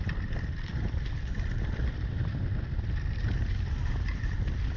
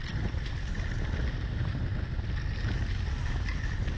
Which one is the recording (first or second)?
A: second